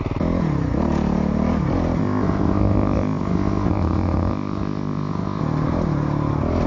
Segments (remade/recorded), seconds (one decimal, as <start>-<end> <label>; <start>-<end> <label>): 0.0-2.0 recorded; 2.0-5.4 remade; 5.4-6.7 recorded